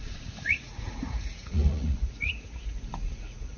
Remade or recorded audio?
remade